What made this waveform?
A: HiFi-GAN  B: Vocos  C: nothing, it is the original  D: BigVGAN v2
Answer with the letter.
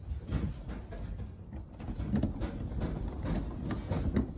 C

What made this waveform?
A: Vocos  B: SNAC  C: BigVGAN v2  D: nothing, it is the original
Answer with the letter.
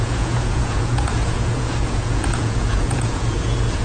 A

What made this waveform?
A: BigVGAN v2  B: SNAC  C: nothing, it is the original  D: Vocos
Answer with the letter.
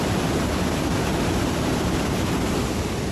A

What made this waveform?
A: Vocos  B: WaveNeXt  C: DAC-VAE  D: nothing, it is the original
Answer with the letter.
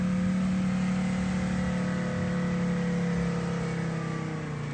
D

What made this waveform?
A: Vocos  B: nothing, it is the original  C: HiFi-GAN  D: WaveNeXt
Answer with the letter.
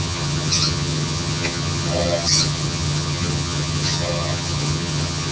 C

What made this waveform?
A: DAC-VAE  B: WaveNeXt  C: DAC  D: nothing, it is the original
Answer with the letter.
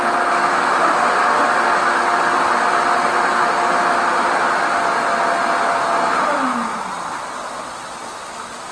D